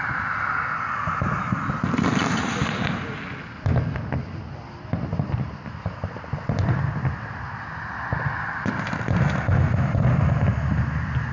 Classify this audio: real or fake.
real